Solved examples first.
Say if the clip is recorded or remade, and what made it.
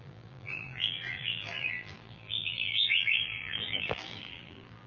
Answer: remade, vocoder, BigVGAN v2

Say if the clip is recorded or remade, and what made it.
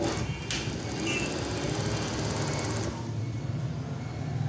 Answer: recorded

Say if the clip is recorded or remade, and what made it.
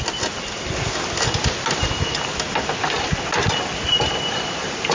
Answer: recorded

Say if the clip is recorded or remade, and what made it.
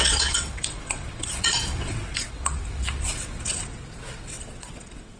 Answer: remade, vocoder, WaveNeXt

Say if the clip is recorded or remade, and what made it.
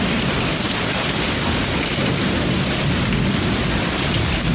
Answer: recorded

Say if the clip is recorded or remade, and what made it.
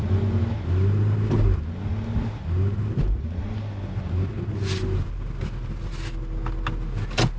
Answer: recorded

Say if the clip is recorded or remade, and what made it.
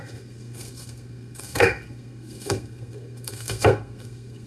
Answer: remade, codec, SNAC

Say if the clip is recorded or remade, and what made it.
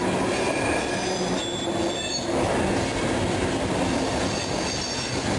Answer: recorded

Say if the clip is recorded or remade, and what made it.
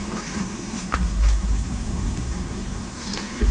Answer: remade, codec, SNAC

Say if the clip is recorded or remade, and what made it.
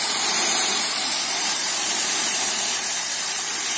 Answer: remade, vocoder, BigVGAN v2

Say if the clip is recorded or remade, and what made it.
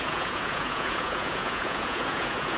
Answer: remade, vocoder, Vocos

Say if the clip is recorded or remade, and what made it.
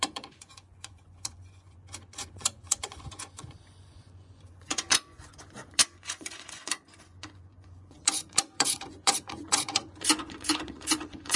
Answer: remade, vocoder, Vocos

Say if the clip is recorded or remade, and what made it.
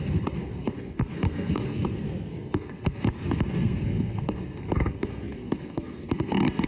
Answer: remade, codec, SNAC